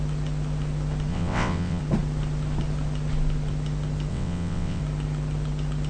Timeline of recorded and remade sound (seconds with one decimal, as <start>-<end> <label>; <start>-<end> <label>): 0.0-1.1 recorded; 1.1-1.8 remade; 1.8-4.1 recorded; 4.1-4.8 remade; 4.8-5.9 recorded